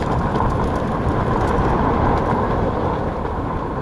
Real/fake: real